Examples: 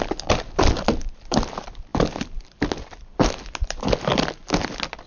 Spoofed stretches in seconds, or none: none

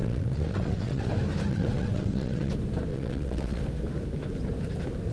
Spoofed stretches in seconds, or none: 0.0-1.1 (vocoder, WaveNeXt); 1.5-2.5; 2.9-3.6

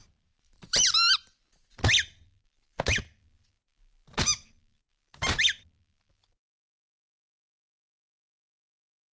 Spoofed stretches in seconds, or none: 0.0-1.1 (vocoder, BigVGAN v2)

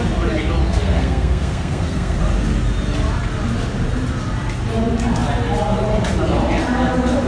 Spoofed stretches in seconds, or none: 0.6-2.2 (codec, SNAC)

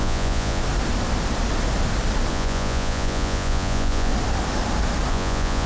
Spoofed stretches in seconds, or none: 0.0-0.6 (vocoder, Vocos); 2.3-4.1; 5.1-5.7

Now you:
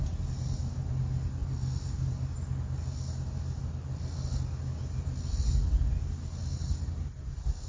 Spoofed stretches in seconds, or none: none

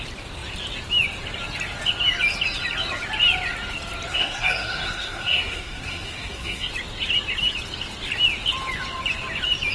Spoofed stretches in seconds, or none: 4.1-6.7 (codec, SNAC)

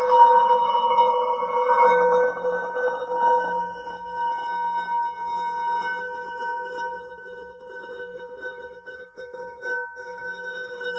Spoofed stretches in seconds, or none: 0.0-4.3 (autoencoder, DAC-VAE); 6.0-11.0